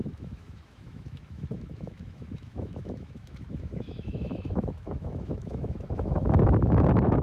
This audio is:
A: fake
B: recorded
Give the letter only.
A